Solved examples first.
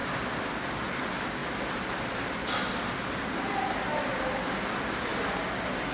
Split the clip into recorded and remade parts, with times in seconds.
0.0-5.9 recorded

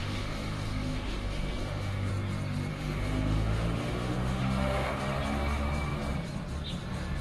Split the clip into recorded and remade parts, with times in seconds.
0.0-2.1 remade; 2.1-2.7 recorded; 2.7-5.0 remade; 5.0-7.2 recorded

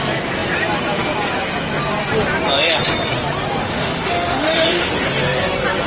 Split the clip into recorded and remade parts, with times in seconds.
0.0-3.6 recorded; 3.6-4.9 remade; 4.9-5.9 recorded

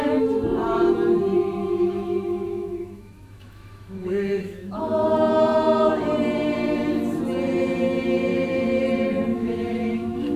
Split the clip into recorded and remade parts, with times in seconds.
0.0-1.6 recorded; 1.6-4.8 remade; 4.8-8.3 recorded; 8.3-8.8 remade; 8.8-9.3 recorded; 9.3-10.4 remade

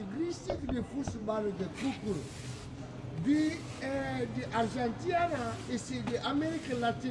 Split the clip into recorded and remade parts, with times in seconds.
0.0-7.1 recorded

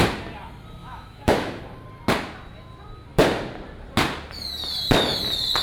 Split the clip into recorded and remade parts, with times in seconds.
0.0-0.8 recorded; 0.8-1.6 remade; 1.6-5.6 recorded

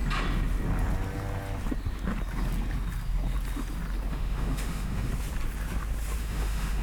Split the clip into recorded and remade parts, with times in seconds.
0.0-4.1 recorded; 4.1-5.1 remade; 5.1-6.2 recorded; 6.2-6.8 remade